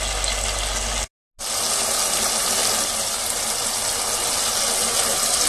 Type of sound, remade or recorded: recorded